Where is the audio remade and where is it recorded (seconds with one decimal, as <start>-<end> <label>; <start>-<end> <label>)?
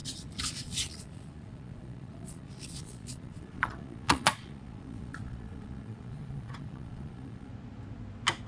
0.0-7.5 remade; 7.5-8.5 recorded